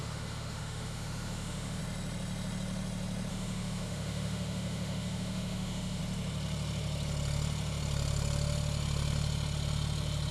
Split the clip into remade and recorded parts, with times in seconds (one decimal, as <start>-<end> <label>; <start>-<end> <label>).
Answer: 0.0-1.8 remade; 1.8-3.3 recorded; 3.3-6.0 remade; 6.0-10.3 recorded